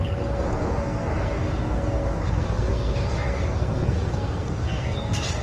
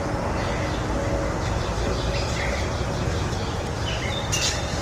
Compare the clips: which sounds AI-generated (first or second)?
first